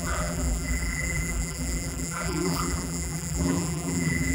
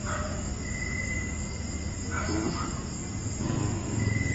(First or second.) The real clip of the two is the second